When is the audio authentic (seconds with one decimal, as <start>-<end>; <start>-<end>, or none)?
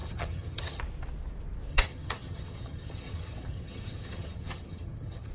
0.8-1.7